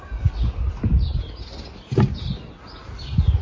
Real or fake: real